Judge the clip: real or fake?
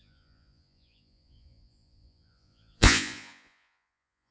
fake